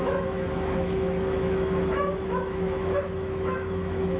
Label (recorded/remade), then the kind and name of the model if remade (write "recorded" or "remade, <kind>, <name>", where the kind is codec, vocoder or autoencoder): remade, autoencoder, DAC-VAE